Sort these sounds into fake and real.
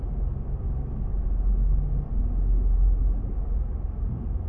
real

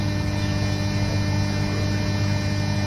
real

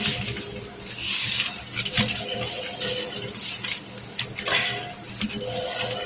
real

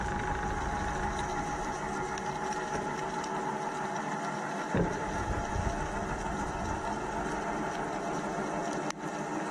real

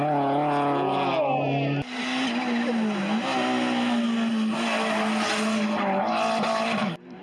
real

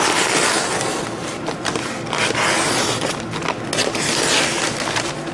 real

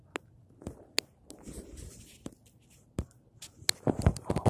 real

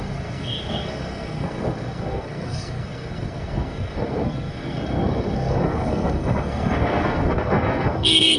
fake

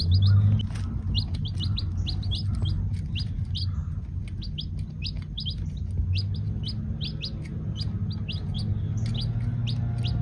real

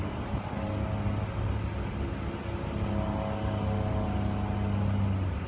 real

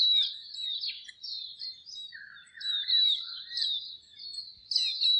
real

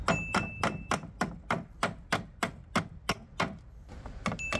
real